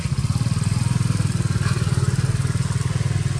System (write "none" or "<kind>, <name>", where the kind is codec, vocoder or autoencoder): none